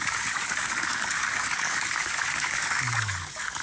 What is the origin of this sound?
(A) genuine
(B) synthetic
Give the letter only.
B